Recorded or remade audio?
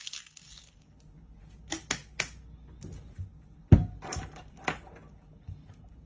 recorded